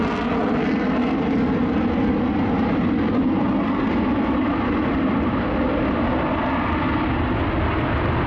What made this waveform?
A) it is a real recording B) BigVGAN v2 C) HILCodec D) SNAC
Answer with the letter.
A